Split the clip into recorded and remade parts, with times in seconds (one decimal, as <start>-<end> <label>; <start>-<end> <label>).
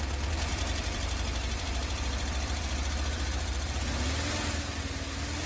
0.0-0.5 recorded; 0.5-3.8 remade; 3.8-5.5 recorded